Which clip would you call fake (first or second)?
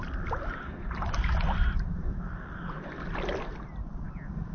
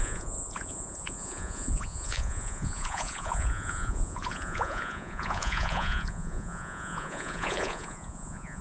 second